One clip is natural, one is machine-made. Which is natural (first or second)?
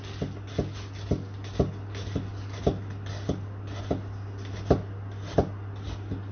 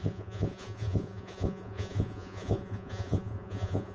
first